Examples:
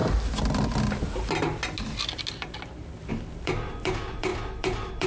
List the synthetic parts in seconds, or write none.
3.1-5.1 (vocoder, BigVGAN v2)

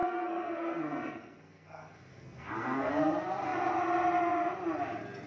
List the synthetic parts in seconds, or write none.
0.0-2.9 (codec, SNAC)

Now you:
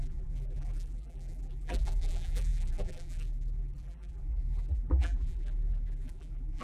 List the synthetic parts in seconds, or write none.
0.0-6.6 (vocoder, BigVGAN v2)